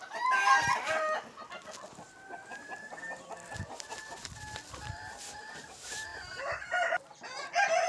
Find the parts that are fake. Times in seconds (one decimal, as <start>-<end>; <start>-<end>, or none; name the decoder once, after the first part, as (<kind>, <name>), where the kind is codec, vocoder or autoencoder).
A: none